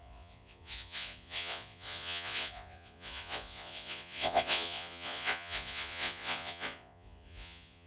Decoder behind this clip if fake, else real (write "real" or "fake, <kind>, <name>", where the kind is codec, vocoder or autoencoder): fake, vocoder, Vocos